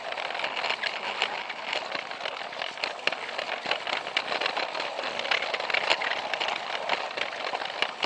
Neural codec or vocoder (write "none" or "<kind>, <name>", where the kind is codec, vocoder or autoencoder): none